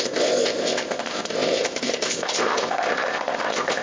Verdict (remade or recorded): remade